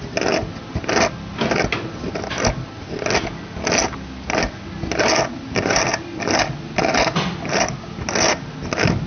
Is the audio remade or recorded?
recorded